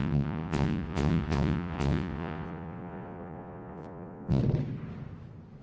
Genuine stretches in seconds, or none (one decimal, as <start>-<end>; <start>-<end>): 4.4-5.6